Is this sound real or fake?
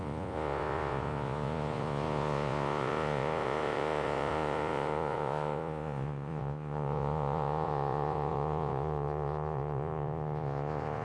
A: fake